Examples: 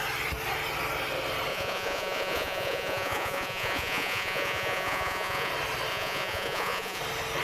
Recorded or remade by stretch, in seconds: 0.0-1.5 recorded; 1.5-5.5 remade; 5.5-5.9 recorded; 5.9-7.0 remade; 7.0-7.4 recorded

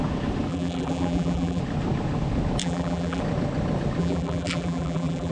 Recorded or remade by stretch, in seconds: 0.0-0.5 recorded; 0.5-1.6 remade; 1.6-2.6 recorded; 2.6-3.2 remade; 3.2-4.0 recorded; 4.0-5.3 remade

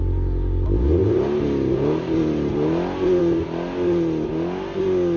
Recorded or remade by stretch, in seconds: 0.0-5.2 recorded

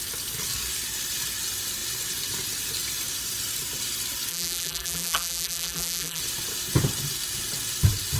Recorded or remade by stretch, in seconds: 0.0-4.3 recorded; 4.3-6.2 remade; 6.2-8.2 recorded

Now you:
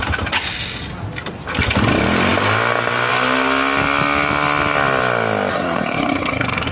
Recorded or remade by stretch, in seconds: 0.0-5.5 recorded; 5.5-6.7 remade

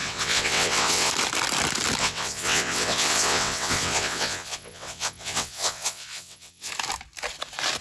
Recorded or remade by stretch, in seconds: 0.0-1.1 remade; 1.1-2.0 recorded; 2.0-6.7 remade; 6.7-7.8 recorded

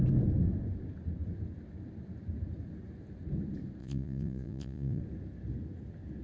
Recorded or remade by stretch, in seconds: 0.0-3.8 recorded; 3.8-5.0 remade; 5.0-6.2 recorded